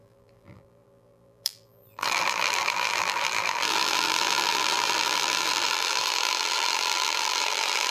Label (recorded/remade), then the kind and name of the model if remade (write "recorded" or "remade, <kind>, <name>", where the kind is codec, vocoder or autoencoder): remade, vocoder, BigVGAN v2